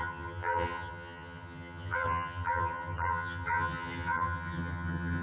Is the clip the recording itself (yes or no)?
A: no